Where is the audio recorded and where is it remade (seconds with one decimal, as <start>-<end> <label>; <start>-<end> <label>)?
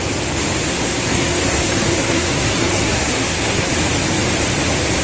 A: 0.0-0.7 recorded; 0.7-3.7 remade; 3.7-5.0 recorded